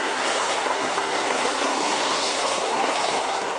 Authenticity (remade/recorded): remade